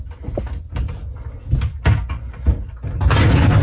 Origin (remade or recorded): recorded